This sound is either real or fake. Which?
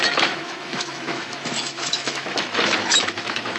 fake